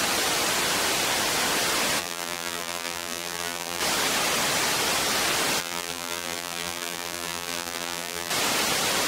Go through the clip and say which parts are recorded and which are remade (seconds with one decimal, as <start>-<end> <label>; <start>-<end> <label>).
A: 0.0-2.0 recorded; 2.0-3.8 remade; 3.8-5.6 recorded; 5.6-8.3 remade; 8.3-9.1 recorded